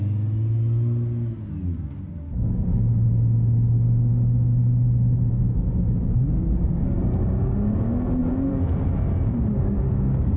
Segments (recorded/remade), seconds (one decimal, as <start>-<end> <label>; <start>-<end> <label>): 0.0-8.2 recorded; 8.2-8.7 remade; 8.7-10.4 recorded